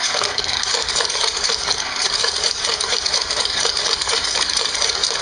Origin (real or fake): fake